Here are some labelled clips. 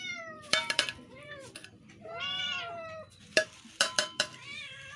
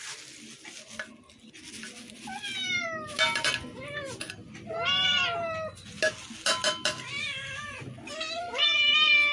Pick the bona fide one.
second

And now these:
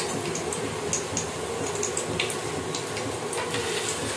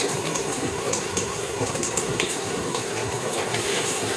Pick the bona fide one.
first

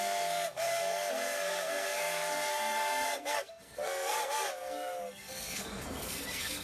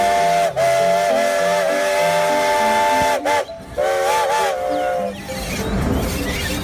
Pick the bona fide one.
second